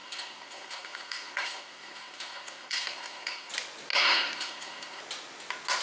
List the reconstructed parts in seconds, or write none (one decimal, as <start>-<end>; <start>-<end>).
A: 0.0-3.5; 3.9-5.0